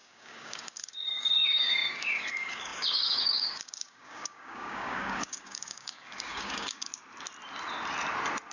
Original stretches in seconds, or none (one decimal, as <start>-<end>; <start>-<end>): 6.9-8.5